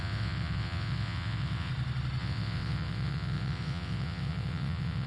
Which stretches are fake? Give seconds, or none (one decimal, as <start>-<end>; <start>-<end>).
0.0-1.7; 2.2-5.1